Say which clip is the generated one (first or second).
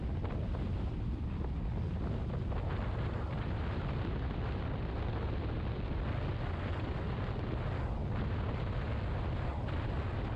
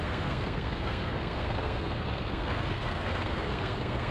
second